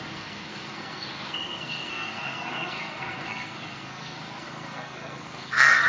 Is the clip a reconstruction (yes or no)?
yes